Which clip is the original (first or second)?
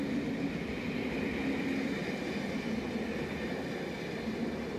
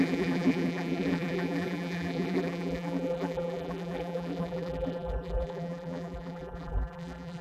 first